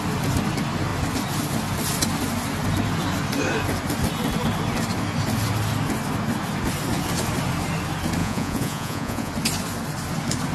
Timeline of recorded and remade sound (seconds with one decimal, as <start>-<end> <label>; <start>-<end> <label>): 0.0-8.2 recorded; 8.2-9.3 remade; 9.3-10.5 recorded